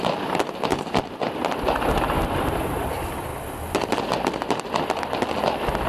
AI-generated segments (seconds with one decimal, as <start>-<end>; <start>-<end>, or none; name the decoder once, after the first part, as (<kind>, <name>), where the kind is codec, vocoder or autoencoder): none